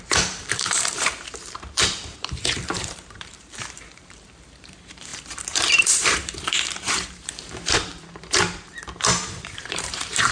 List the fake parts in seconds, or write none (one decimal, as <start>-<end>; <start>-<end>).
0.0-10.3